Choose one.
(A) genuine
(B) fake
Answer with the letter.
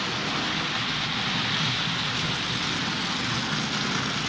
A